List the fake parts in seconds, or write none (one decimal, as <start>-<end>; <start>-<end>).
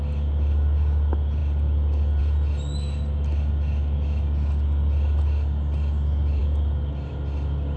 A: none